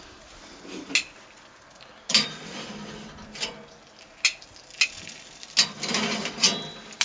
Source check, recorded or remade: recorded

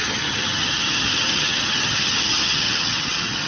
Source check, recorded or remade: remade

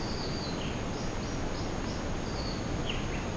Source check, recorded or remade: recorded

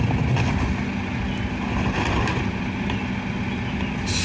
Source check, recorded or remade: recorded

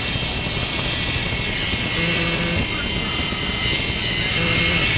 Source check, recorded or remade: recorded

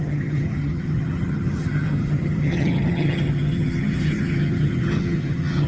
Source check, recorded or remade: remade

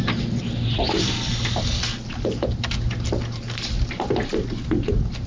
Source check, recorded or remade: recorded